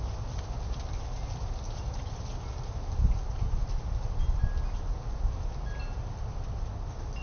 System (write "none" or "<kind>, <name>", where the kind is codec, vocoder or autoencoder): none